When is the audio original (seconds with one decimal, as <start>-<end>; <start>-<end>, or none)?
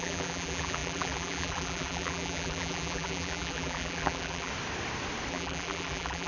4.5-5.3